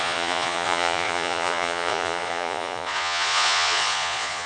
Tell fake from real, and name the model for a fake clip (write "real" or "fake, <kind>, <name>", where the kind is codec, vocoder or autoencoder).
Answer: fake, vocoder, Vocos